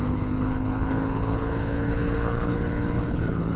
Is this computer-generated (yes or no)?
yes